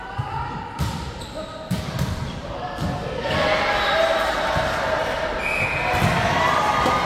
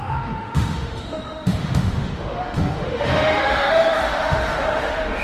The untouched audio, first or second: first